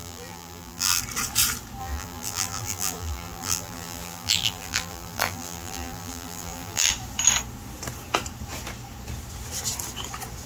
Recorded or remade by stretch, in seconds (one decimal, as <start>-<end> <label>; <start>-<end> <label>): 0.0-1.0 remade; 1.0-1.8 recorded; 1.8-6.9 remade; 6.9-10.5 recorded